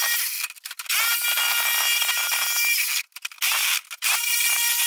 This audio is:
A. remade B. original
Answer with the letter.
B